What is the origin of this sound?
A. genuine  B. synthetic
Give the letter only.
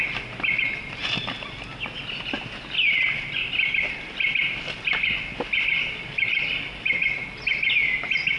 A